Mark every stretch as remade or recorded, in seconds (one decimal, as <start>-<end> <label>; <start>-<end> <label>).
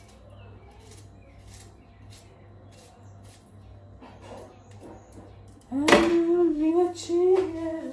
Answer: 0.0-6.1 recorded; 6.1-6.7 remade; 6.7-7.9 recorded